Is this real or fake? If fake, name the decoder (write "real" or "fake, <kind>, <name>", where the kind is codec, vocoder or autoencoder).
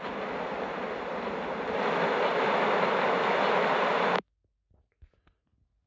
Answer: real